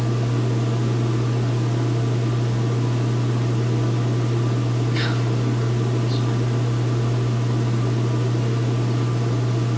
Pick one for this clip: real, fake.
real